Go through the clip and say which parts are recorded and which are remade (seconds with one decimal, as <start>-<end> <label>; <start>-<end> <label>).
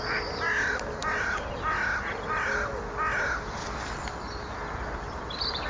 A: 0.0-5.7 recorded